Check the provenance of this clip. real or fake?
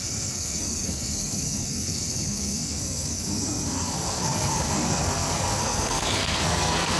fake